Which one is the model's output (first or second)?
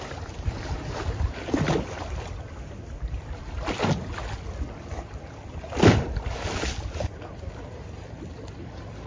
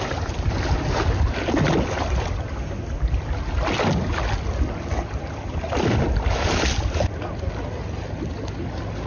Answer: first